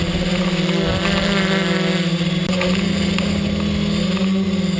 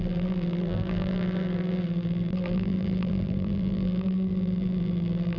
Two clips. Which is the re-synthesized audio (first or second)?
second